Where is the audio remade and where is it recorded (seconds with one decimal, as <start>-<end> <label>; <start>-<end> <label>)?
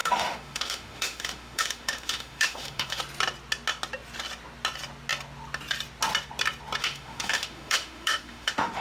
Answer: 0.0-3.0 remade; 3.0-6.8 recorded; 6.8-8.8 remade